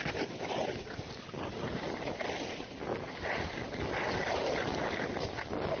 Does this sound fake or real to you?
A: real